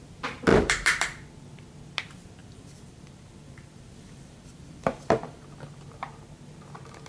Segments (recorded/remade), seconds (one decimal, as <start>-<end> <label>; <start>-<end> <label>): 0.0-0.5 recorded; 0.5-1.3 remade; 1.3-2.4 recorded; 2.4-6.1 remade; 6.1-7.1 recorded